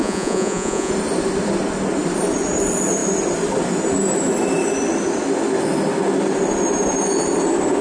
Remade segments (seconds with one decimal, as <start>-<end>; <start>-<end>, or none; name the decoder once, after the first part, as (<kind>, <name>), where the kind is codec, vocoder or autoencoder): 0.0-0.9 (vocoder, Vocos)